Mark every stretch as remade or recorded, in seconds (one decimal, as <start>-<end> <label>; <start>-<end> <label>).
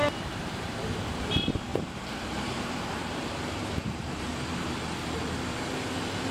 0.0-1.7 recorded; 1.7-4.3 remade; 4.3-6.3 recorded